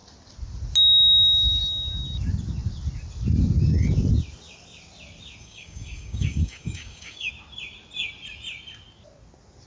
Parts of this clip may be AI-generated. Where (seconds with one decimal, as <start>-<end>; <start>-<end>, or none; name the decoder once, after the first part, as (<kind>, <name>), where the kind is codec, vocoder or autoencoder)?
5.4-7.3 (codec, DAC)